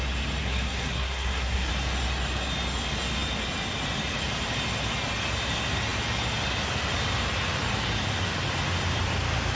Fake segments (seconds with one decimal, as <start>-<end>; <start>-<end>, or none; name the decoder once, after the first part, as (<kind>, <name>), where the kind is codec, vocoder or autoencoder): 0.4-1.7 (codec, SNAC)